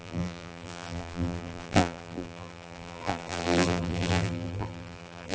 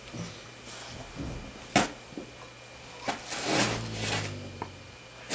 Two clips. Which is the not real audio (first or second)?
first